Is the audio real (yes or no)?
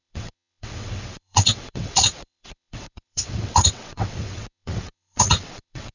no